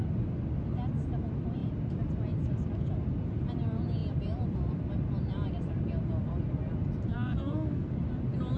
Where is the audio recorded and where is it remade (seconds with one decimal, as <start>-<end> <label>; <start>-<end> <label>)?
0.0-7.1 recorded; 7.1-7.9 remade; 7.9-8.6 recorded

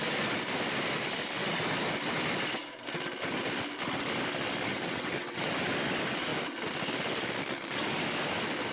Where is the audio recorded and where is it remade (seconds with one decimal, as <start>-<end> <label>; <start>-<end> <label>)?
0.0-4.7 recorded; 4.7-5.5 remade; 5.5-8.7 recorded

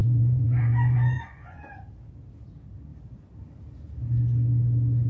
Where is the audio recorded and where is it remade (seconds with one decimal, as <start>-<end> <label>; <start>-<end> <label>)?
0.0-1.8 remade; 1.8-5.1 recorded

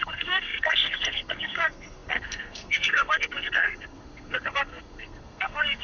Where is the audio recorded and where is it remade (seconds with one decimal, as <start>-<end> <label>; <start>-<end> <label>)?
0.0-5.8 remade

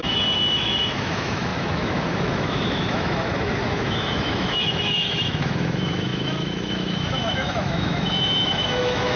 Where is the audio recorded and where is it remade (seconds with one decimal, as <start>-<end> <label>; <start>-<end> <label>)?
0.0-9.2 remade

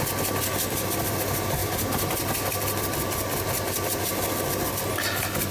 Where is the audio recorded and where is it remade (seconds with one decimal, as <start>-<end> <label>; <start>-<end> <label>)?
0.0-5.5 recorded